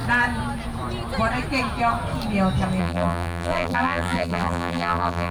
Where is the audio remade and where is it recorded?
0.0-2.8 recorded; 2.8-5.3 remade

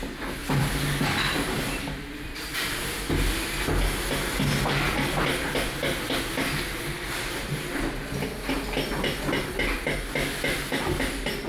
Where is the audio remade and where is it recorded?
0.0-0.4 recorded; 0.4-3.1 remade; 3.1-11.5 recorded

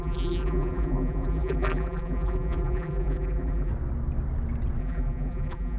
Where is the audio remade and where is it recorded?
0.0-3.7 remade; 3.7-4.8 recorded; 4.8-5.8 remade

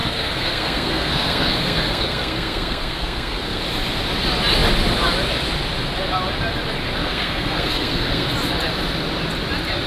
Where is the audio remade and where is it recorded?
0.0-3.6 remade; 3.6-7.0 recorded; 7.0-8.3 remade; 8.3-9.9 recorded

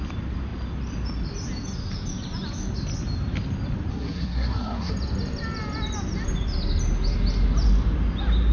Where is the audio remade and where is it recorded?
0.0-3.9 recorded; 3.9-4.9 remade; 4.9-8.5 recorded

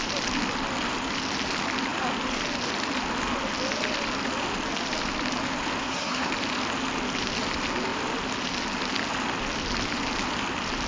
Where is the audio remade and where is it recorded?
0.0-5.8 recorded; 5.8-6.3 remade; 6.3-10.9 recorded

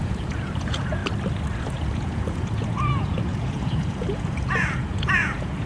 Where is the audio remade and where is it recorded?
0.0-1.0 remade; 1.0-1.6 recorded; 1.6-5.7 remade